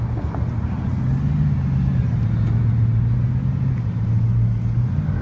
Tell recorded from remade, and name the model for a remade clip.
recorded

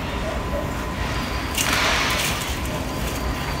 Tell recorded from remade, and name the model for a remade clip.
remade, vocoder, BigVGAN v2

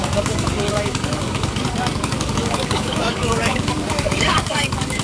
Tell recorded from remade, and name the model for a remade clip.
remade, codec, DAC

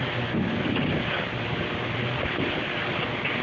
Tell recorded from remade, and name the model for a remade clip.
recorded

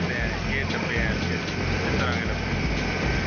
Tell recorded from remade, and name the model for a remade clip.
recorded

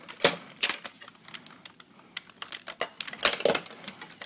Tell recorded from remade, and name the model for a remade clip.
recorded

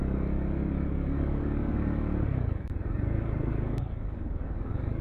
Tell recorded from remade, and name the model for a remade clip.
remade, codec, DAC